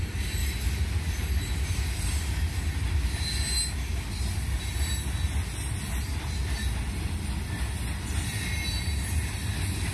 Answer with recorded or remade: recorded